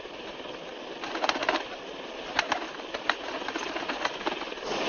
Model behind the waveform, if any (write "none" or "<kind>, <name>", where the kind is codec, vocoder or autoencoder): none